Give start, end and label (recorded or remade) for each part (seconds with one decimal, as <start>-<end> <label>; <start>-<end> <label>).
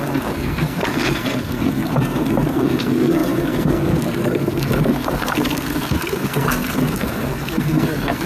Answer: 0.0-8.3 remade